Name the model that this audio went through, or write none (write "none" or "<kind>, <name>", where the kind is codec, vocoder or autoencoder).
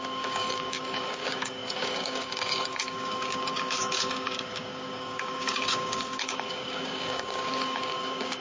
codec, DAC